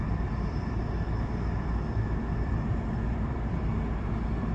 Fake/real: fake